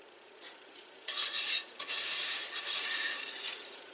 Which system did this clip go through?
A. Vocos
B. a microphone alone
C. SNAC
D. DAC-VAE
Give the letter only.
A